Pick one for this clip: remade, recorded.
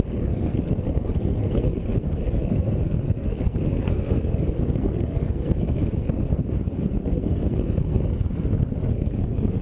remade